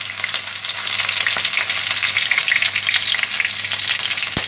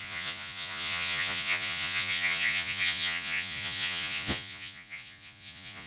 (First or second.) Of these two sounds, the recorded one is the first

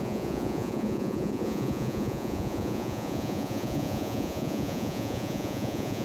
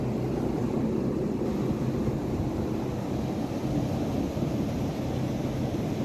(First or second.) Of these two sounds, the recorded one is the second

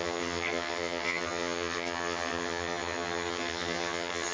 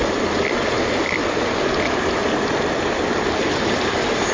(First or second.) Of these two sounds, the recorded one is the second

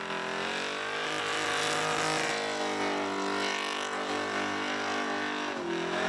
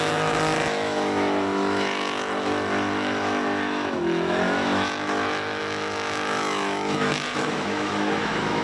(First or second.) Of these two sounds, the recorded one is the first